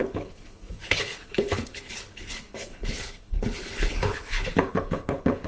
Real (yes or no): no